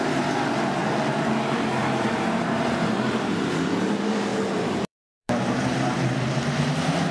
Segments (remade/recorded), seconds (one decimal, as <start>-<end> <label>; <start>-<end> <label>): 0.0-0.8 remade; 0.8-1.8 recorded; 1.8-7.1 remade